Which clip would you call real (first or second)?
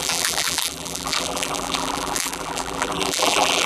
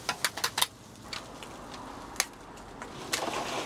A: second